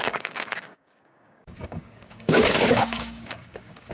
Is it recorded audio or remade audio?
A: remade